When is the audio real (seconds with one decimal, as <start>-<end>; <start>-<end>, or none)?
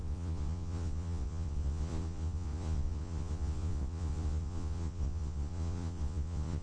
none